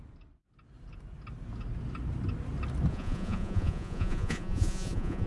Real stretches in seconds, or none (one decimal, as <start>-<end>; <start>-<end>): 0.0-2.9